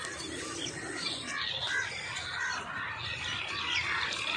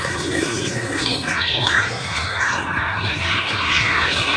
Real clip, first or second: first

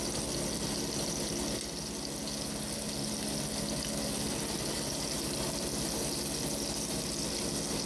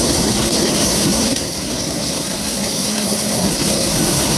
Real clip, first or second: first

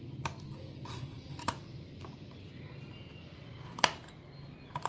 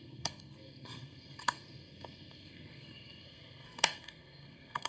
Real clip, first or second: first